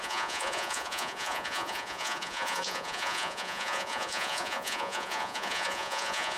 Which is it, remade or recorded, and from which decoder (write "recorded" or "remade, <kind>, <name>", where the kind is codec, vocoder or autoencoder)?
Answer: remade, vocoder, Vocos